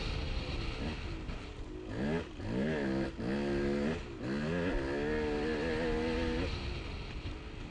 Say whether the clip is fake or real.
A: real